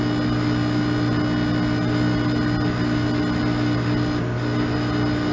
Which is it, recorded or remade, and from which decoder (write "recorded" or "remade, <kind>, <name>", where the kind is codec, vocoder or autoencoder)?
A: recorded